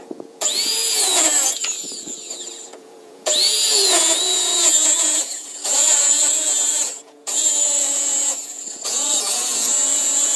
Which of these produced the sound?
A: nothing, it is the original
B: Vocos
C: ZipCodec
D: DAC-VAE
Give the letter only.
B